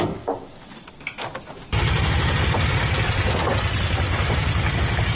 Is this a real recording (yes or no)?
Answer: yes